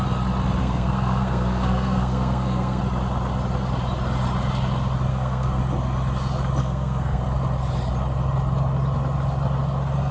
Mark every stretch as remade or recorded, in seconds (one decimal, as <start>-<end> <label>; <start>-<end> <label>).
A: 0.0-0.6 recorded; 0.6-2.8 remade; 2.8-5.1 recorded; 5.1-5.6 remade; 5.6-6.6 recorded; 6.6-7.2 remade; 7.2-10.1 recorded